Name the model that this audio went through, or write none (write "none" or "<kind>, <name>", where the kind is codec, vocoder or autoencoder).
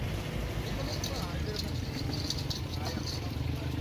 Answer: none